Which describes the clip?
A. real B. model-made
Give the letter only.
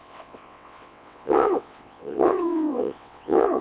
B